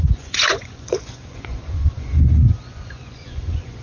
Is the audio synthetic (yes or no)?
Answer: yes